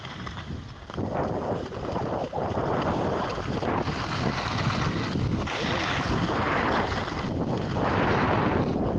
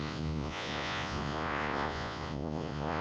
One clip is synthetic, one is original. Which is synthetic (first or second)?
second